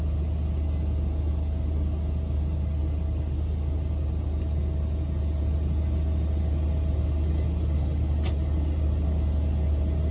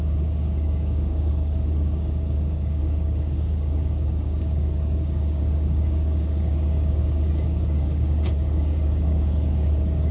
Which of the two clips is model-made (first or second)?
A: second